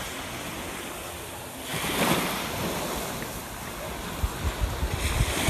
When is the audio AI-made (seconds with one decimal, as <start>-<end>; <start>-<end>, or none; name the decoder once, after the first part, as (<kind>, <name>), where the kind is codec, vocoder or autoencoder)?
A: none